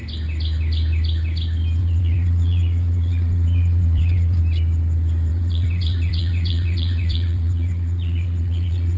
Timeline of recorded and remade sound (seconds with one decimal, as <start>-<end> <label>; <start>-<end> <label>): 0.0-1.8 recorded; 1.8-4.4 remade; 4.4-5.3 recorded; 5.3-9.0 remade